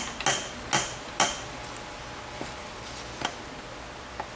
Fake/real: real